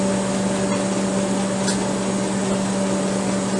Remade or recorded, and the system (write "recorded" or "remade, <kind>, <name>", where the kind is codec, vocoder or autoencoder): recorded